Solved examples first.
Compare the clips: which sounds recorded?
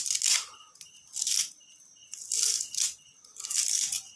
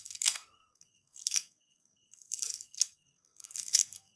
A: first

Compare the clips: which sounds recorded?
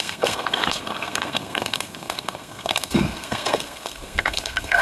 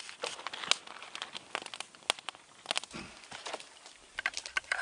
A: second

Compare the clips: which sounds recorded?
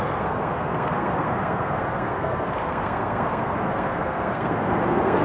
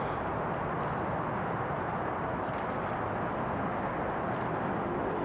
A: second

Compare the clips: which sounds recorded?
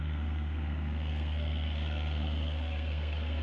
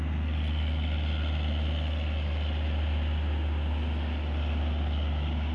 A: second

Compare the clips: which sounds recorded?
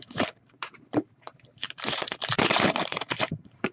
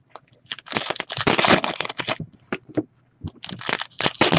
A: second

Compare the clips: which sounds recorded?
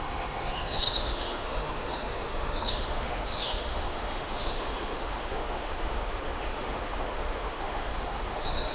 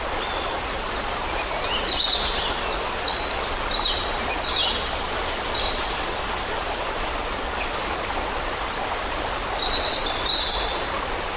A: second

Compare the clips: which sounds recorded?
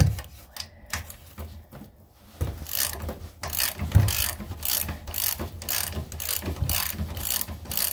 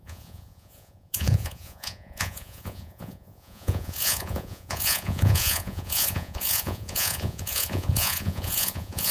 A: first